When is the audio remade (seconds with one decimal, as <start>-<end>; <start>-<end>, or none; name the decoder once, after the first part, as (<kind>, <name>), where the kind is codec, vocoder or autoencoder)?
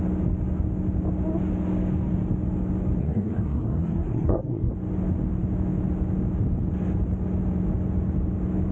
3.0-4.7 (codec, SNAC)